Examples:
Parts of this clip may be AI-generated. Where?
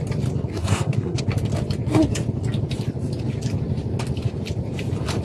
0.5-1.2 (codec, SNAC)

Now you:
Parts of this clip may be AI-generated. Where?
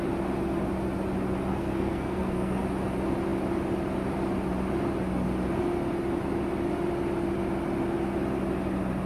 1.5-2.6 (codec, SNAC)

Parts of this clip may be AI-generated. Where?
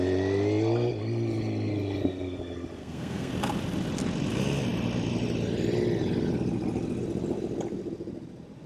2.8-3.3 (codec, SNAC)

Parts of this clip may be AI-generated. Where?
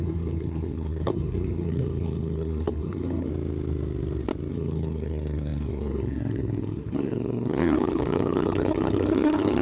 0.0-3.3 (codec, SNAC); 4.5-9.6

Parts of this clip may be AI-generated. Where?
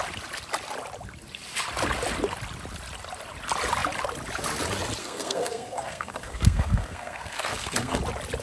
5.0-8.0 (codec, SNAC)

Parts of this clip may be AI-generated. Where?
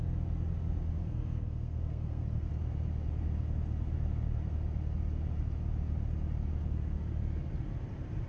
1.0-2.5 (codec, SNAC)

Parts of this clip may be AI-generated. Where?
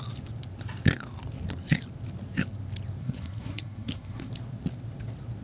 3.0-4.3 (codec, SNAC)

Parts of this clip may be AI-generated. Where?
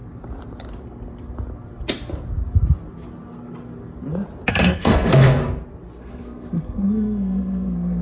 4.5-5.4 (codec, SNAC); 6.0-8.0